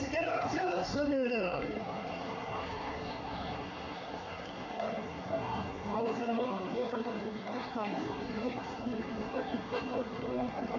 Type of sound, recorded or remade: remade